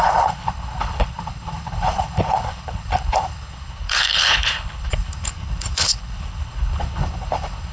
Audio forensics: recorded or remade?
remade